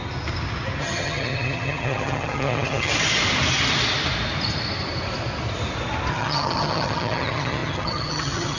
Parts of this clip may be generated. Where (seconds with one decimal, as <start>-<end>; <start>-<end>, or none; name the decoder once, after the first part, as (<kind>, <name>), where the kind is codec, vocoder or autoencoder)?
0.8-2.9 (vocoder, HiFi-GAN); 6.1-8.6